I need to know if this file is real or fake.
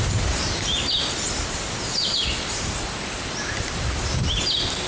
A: real